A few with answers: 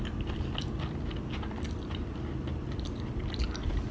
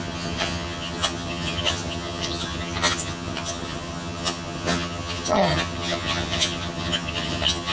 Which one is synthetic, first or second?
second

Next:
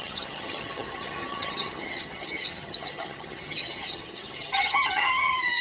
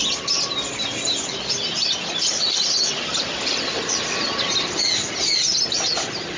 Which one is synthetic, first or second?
first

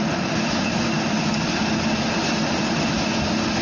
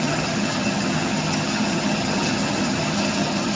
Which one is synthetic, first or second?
second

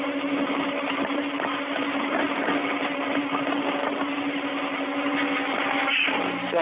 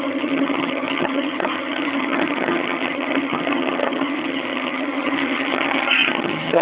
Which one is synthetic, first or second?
second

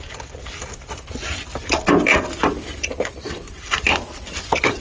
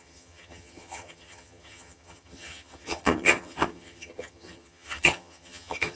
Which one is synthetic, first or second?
second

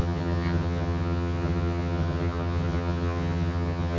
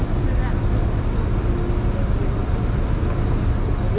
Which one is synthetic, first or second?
first